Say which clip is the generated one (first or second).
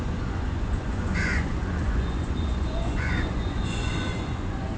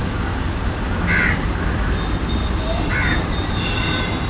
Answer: first